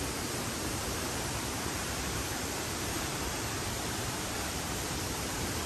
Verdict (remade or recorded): remade